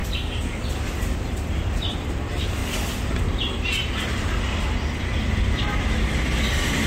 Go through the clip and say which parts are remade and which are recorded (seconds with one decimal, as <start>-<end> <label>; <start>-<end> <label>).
0.0-0.6 remade; 0.6-6.9 recorded